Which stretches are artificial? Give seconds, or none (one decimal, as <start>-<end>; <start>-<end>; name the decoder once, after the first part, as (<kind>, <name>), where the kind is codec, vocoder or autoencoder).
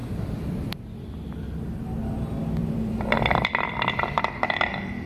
0.0-1.8 (vocoder, BigVGAN v2); 2.6-5.1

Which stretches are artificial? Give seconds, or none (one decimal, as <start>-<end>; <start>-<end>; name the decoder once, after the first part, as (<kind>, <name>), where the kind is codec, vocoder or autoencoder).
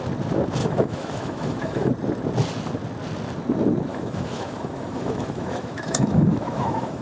0.6-1.9 (autoencoder, DAC-VAE); 3.9-7.0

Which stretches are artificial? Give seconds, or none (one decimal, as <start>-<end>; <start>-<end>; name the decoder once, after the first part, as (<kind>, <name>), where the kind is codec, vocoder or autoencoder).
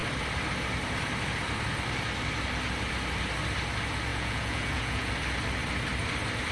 4.1-5.1 (vocoder, Vocos)